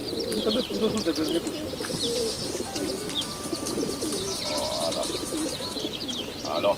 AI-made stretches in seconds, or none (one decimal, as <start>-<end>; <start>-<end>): 0.0-0.6; 1.9-6.0